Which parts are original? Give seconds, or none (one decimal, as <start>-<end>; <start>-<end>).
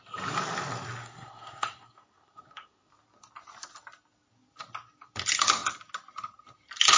0.0-1.0; 2.9-7.0